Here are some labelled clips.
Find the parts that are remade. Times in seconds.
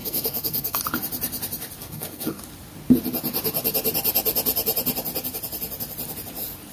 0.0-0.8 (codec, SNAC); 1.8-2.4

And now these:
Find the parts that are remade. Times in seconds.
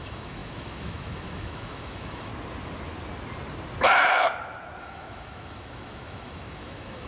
0.0-2.3 (autoencoder, DAC-VAE); 4.8-7.1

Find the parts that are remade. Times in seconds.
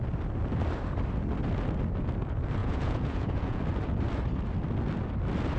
2.6-3.6 (vocoder, Vocos)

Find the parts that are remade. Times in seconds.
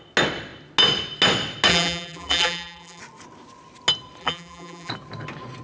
1.7-3.0 (vocoder, BigVGAN v2); 4.2-4.9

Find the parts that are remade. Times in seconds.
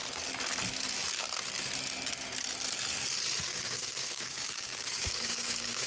3.5-5.9 (codec, DAC)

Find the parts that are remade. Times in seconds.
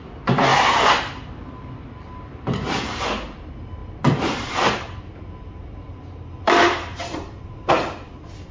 0.5-1.9 (vocoder, BigVGAN v2); 3.8-7.7